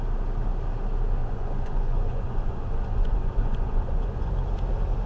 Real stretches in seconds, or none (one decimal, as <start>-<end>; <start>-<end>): 0.0-1.2; 4.3-5.1